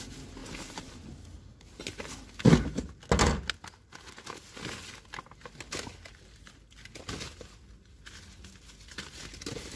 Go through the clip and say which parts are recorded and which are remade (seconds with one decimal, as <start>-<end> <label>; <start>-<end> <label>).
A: 0.0-9.8 recorded